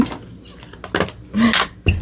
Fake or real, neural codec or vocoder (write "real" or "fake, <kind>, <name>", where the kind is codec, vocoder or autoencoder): real